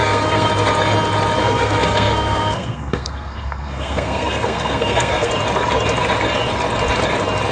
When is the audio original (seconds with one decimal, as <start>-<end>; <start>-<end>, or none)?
0.5-1.4; 5.3-7.5